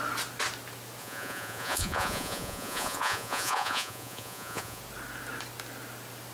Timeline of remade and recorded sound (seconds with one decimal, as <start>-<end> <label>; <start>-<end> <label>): 0.0-1.0 recorded; 1.0-4.8 remade; 4.8-6.3 recorded